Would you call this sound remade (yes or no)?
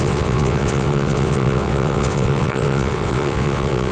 yes